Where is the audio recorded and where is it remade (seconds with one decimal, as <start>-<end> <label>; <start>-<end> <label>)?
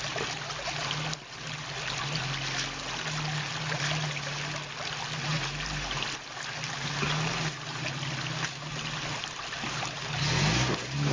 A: 0.0-11.1 recorded